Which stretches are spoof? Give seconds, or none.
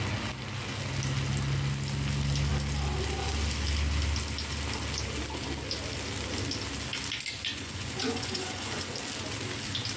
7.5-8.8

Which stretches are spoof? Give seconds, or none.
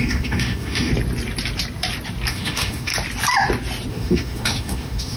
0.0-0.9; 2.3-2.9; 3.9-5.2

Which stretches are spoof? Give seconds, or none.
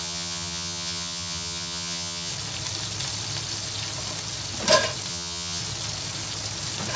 0.0-2.3; 5.1-5.6